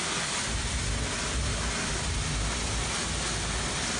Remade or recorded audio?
recorded